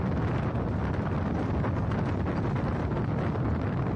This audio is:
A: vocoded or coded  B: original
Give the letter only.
B